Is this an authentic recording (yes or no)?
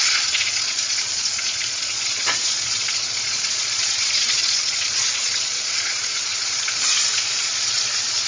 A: no